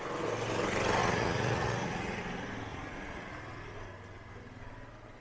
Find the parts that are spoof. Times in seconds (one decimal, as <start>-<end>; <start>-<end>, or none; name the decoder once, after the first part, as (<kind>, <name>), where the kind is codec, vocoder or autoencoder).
1.0-2.2 (vocoder, Vocos); 2.7-3.3